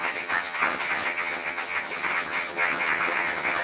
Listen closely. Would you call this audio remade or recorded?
remade